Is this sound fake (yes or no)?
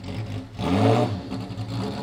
no